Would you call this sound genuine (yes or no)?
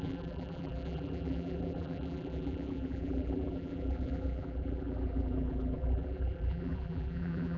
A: no